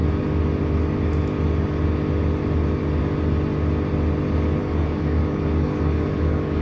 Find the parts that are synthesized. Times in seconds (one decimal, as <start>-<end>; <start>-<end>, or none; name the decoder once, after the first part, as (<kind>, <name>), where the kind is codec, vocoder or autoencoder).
4.6-6.6 (codec, DAC)

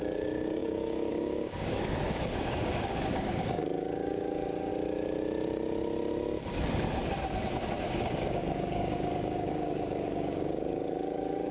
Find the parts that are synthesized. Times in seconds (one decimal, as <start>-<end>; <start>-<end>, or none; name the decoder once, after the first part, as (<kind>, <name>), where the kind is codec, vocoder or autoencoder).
0.0-4.7 (codec, DAC); 7.8-11.5

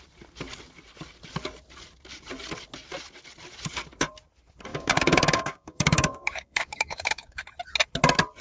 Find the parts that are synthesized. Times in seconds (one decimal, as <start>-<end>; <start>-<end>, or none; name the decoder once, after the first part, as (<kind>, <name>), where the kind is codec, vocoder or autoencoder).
4.7-7.4 (codec, DAC)

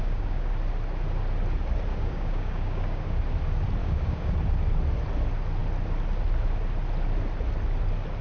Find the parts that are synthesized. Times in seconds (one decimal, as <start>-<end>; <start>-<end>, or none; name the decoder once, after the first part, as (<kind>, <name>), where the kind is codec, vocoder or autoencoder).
0.0-0.5 (codec, DAC); 1.9-3.2; 3.8-4.3

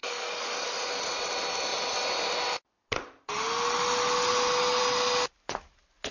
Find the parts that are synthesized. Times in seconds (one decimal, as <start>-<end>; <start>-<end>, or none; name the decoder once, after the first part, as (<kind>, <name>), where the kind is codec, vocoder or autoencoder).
0.0-0.9 (codec, DAC)